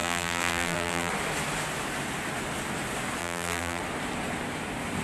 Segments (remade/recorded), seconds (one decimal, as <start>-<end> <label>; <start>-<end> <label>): 0.0-1.1 remade; 1.1-3.2 recorded; 3.2-3.8 remade; 3.8-5.0 recorded